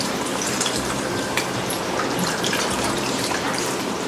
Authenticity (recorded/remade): remade